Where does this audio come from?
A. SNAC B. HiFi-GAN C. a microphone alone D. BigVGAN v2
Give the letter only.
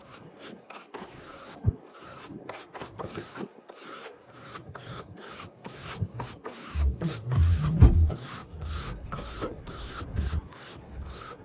A